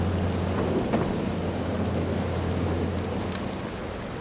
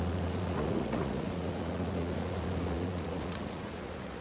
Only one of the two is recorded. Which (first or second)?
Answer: first